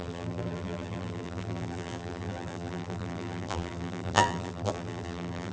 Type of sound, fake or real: fake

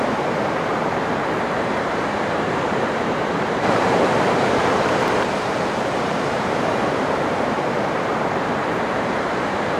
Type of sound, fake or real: fake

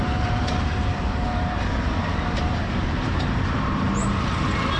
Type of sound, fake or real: fake